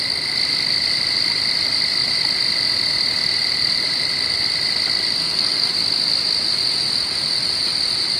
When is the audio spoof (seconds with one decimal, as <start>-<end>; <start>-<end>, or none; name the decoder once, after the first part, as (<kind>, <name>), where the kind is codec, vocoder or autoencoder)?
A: 5.2-5.7 (codec, SNAC)